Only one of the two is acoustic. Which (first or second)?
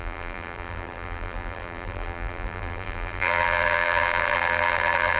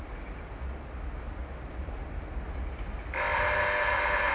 second